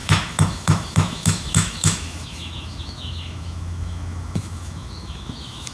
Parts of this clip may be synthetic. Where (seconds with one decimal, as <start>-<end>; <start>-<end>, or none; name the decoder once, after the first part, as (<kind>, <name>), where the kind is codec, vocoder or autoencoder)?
0.0-5.7 (autoencoder, DAC-VAE)